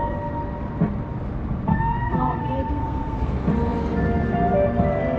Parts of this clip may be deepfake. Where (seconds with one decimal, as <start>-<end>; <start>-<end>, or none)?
1.7-3.3